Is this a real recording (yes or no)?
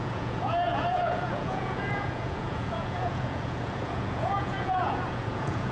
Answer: no